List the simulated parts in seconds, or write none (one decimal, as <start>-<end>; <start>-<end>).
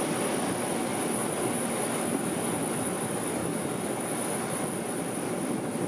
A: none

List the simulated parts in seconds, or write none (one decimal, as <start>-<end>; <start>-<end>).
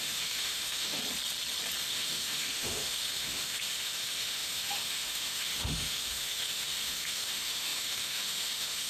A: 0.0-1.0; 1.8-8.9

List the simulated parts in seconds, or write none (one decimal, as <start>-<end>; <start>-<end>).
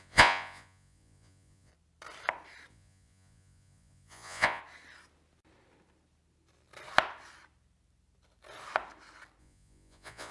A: 0.0-1.7; 2.7-4.6; 9.4-10.3